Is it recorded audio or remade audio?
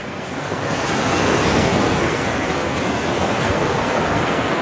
remade